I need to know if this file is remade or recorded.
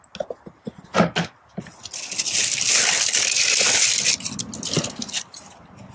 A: recorded